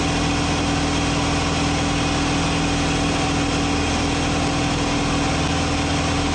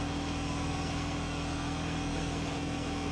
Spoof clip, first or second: second